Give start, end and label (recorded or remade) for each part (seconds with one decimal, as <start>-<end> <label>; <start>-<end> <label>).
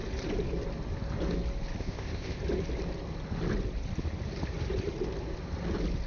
0.0-1.8 recorded; 1.8-2.4 remade; 2.4-6.1 recorded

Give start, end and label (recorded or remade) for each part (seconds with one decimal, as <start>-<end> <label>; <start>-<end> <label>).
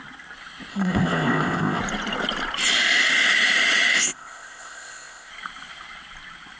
0.0-0.7 recorded; 0.7-1.8 remade; 1.8-3.9 recorded; 3.9-5.3 remade; 5.3-6.6 recorded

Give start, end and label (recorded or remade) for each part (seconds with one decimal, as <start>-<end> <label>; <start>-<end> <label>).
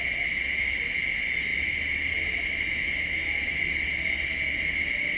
0.0-5.2 recorded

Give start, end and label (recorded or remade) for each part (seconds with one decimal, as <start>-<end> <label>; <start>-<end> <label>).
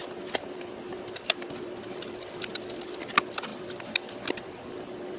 0.0-5.2 recorded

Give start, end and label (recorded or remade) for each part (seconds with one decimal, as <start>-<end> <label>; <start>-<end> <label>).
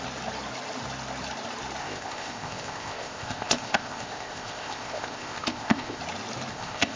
0.0-1.8 recorded; 1.8-6.0 remade; 6.0-6.5 recorded; 6.5-7.0 remade